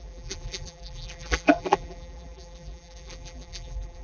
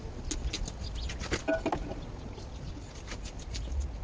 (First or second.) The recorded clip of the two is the second